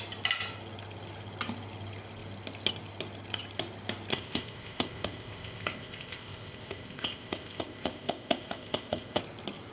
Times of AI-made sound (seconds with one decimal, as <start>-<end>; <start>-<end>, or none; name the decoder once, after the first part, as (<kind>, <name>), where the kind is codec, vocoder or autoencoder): 4.1-9.2 (codec, ZipCodec)